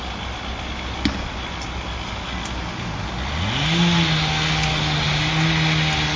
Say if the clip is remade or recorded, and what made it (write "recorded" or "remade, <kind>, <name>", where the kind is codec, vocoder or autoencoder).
recorded